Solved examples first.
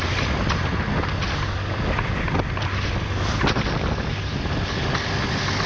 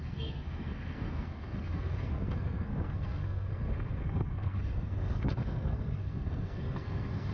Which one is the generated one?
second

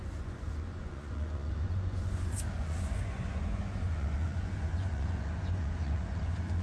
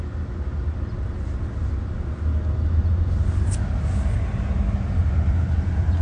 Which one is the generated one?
first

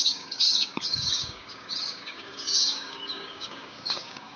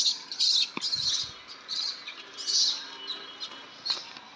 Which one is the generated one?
first